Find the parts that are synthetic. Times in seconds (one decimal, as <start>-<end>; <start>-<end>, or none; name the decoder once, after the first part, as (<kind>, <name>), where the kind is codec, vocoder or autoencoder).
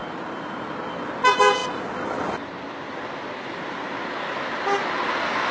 none